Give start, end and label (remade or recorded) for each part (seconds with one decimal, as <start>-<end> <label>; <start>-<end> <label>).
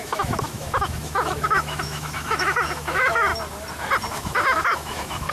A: 0.0-3.3 remade; 3.3-4.1 recorded; 4.1-5.3 remade